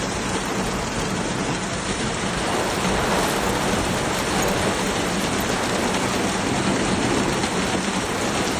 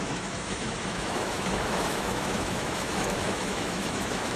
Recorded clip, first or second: first